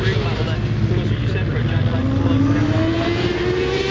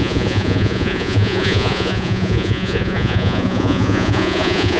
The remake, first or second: second